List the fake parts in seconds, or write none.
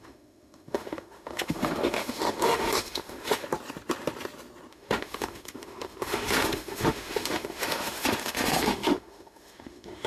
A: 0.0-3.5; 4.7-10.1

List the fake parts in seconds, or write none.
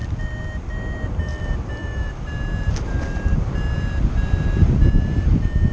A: 1.8-2.3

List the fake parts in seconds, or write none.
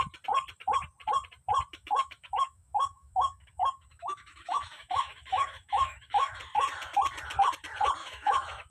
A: 1.7-6.4; 8.0-8.7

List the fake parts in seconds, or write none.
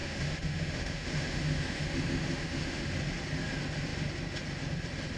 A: 0.0-2.9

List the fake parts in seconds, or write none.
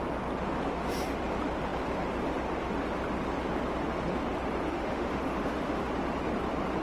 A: 4.7-5.9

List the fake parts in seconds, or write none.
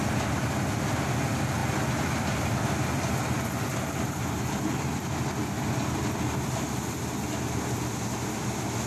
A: none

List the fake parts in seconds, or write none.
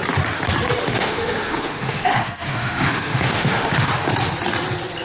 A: 0.9-3.9